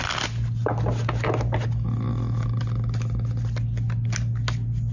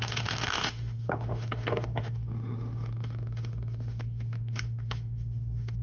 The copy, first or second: second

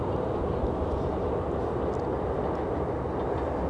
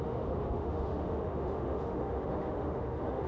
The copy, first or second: second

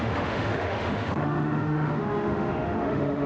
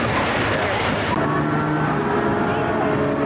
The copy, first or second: first